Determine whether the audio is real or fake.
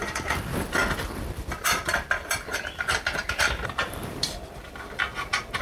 fake